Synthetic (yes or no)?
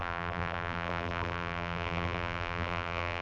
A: yes